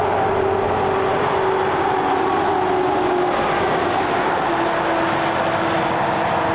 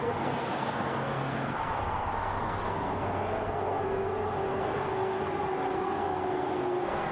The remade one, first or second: second